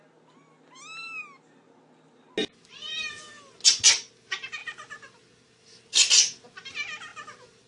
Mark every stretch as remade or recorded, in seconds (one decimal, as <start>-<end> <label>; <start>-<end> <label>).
0.0-7.7 recorded

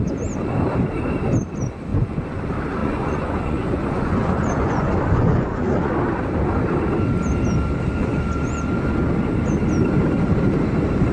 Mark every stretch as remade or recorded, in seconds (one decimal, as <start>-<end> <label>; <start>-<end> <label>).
0.0-1.9 recorded; 1.9-2.4 remade; 2.4-2.8 recorded; 2.8-5.9 remade; 5.9-11.1 recorded

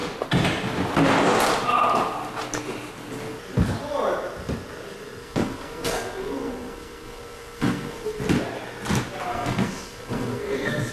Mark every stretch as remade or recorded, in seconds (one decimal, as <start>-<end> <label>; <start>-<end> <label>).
0.0-5.2 recorded; 5.2-8.2 remade; 8.2-9.3 recorded; 9.3-10.9 remade

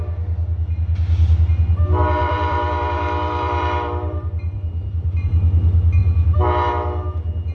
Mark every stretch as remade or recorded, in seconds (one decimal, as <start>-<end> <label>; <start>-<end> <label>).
0.0-2.2 recorded; 2.2-5.3 remade; 5.3-7.5 recorded

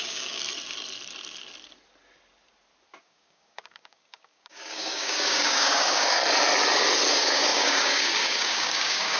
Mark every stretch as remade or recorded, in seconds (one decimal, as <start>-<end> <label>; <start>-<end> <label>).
0.0-0.4 remade; 0.4-3.0 recorded; 3.0-6.2 remade; 6.2-7.1 recorded; 7.1-9.2 remade

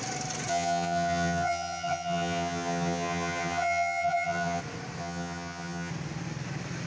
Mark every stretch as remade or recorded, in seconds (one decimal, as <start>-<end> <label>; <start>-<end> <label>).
0.0-0.5 recorded; 0.5-4.6 remade; 4.6-5.0 recorded; 5.0-5.9 remade; 5.9-6.9 recorded

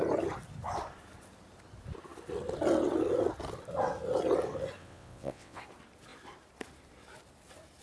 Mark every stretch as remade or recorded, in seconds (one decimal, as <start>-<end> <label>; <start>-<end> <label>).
0.0-4.8 recorded; 4.8-5.6 remade; 5.6-7.8 recorded